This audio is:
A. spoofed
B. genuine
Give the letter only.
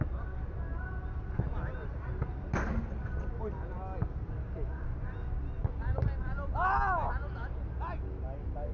B